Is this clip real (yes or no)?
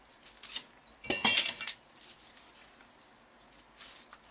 yes